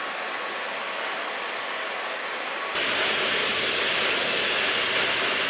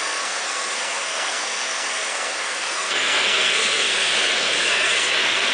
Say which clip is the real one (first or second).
first